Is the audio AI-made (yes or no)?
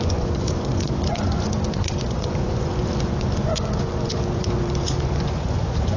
yes